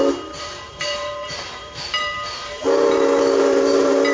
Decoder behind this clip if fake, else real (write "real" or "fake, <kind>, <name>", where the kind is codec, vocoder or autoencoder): fake, vocoder, BigVGAN v2